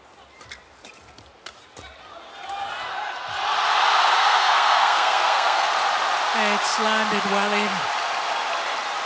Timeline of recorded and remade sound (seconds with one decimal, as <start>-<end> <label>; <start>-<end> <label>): 0.0-4.0 recorded; 4.0-5.7 remade; 5.7-9.1 recorded